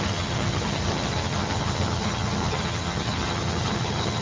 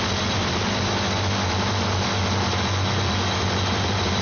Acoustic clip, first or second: second